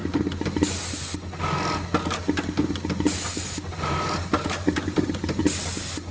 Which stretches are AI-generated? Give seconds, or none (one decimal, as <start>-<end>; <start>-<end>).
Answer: 3.7-5.4